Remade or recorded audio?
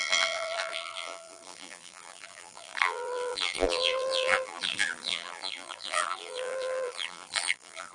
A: remade